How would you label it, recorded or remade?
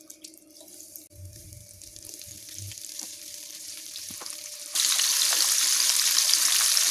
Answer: remade